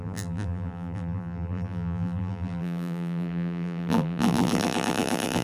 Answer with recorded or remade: remade